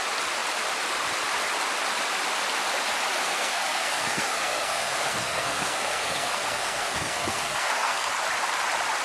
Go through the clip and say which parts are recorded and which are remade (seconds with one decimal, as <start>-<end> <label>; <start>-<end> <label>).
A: 0.0-3.2 recorded; 3.2-8.1 remade; 8.1-9.0 recorded